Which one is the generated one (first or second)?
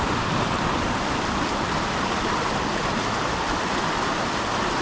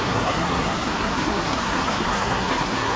second